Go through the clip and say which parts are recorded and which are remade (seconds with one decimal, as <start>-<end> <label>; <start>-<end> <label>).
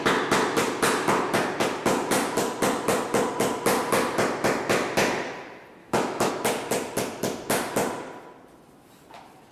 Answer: 0.0-5.8 recorded; 5.8-6.3 remade; 6.3-9.5 recorded